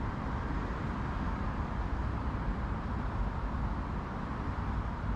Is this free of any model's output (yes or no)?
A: no